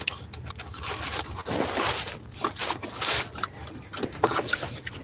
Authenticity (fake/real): real